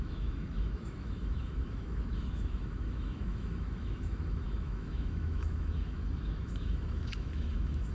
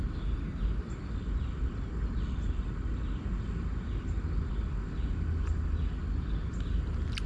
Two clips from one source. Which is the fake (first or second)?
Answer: first